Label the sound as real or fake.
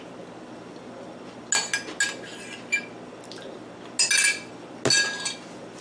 real